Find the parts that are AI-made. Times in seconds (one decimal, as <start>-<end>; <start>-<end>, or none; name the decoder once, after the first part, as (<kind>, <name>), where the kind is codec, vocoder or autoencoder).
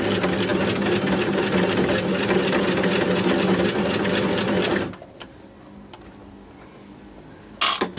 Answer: none